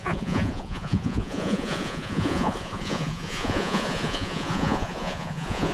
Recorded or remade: remade